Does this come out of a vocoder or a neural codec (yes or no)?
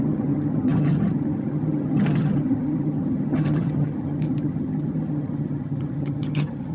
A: yes